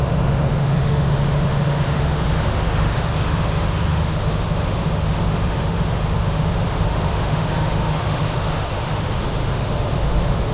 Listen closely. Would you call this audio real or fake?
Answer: fake